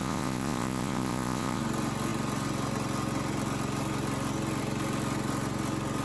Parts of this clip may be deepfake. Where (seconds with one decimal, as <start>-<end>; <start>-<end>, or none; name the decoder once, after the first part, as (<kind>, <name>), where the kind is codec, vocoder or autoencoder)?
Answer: 0.0-1.6 (vocoder, Vocos)